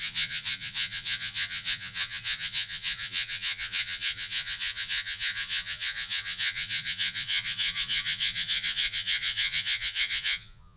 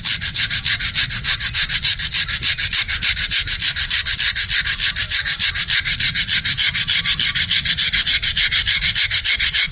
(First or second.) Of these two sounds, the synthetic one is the first